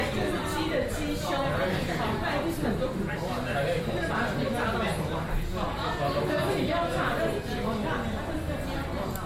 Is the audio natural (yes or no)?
yes